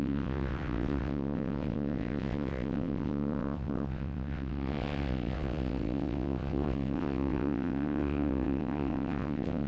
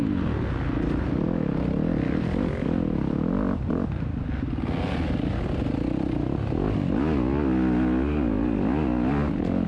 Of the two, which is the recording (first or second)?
second